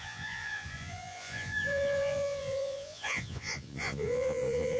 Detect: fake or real fake